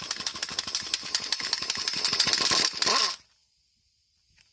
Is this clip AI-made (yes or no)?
no